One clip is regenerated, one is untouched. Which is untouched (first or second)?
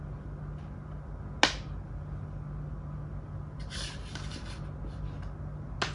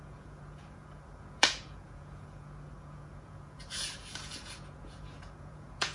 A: first